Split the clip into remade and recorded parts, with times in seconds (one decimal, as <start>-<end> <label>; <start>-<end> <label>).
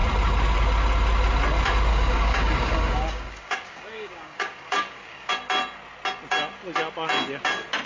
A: 0.0-1.9 recorded; 1.9-5.3 remade; 5.3-7.9 recorded